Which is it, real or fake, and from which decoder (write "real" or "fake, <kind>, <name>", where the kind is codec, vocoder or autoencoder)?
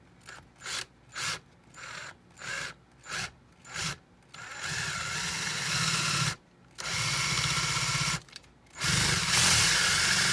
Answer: real